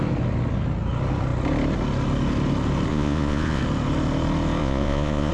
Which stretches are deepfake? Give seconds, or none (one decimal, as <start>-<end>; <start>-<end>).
2.9-3.6; 4.6-5.3